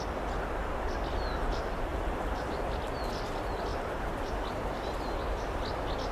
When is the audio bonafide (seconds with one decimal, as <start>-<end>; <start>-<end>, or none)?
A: 0.0-1.9; 3.3-3.7; 4.5-6.1